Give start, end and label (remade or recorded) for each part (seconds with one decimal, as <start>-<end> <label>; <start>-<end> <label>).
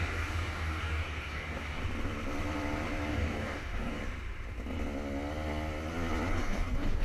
0.0-1.8 remade; 1.8-3.1 recorded; 3.1-4.0 remade; 4.0-6.3 recorded; 6.3-7.0 remade